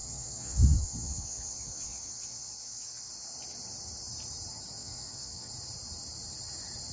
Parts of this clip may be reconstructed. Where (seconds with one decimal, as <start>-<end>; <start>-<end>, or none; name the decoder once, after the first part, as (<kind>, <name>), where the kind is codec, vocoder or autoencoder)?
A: 0.0-3.1 (vocoder, WaveNeXt); 4.8-5.5